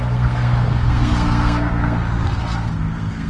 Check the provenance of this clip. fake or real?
fake